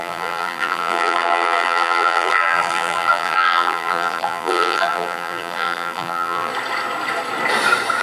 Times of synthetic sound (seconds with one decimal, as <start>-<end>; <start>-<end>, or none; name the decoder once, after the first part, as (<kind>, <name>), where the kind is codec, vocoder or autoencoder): 0.0-6.5 (vocoder, BigVGAN v2)